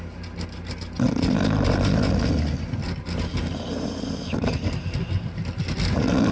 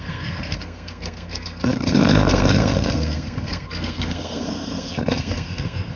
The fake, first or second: second